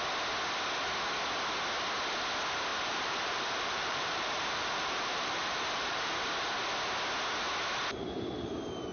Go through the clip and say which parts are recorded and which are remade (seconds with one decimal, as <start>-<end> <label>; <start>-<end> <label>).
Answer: 0.0-2.7 recorded; 2.7-6.2 remade; 6.2-8.9 recorded